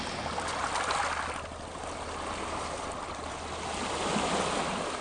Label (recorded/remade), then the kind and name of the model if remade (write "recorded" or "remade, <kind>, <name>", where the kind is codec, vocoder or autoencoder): recorded